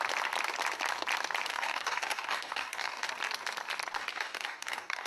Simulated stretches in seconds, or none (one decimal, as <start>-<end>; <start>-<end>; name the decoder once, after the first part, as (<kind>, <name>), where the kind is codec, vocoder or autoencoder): 1.5-3.1 (codec, DAC); 4.0-5.1